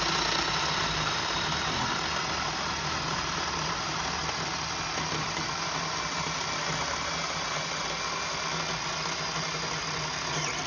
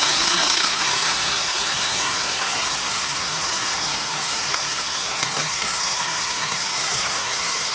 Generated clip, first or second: second